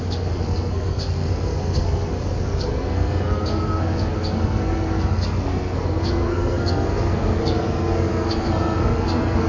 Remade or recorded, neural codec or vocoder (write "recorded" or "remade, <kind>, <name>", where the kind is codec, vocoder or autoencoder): remade, codec, SNAC